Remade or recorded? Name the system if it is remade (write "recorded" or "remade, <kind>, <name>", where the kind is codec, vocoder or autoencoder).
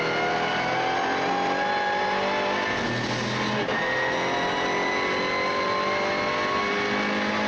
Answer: recorded